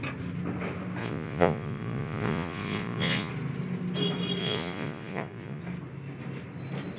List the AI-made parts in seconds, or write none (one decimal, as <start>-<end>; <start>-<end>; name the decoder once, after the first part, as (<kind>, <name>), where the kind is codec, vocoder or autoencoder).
1.0-3.3 (vocoder, Vocos); 4.4-5.6